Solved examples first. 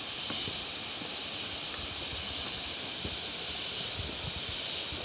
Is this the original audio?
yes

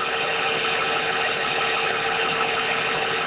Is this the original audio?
no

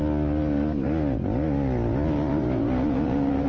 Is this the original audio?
yes